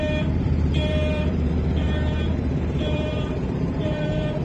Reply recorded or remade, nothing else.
remade